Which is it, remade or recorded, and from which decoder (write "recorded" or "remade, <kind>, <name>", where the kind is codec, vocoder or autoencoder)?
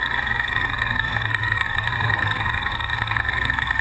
remade, codec, SNAC